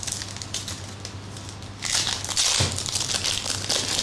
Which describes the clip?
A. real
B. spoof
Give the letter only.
A